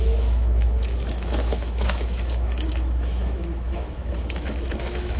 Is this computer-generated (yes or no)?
yes